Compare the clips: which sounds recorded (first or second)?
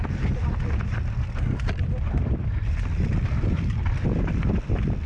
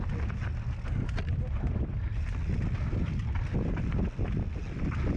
second